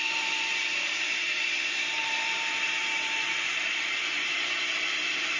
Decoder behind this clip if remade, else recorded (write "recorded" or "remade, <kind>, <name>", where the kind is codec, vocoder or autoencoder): remade, vocoder, BigVGAN v2